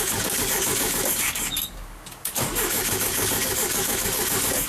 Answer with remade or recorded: remade